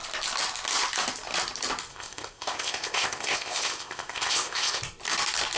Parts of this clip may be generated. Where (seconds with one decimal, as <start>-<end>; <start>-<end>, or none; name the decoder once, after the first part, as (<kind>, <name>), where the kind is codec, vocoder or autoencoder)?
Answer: 1.9-4.8 (codec, ZipCodec)